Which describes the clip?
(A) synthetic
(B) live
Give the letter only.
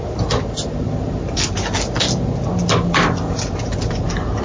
B